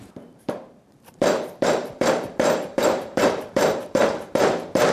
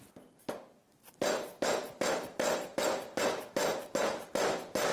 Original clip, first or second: second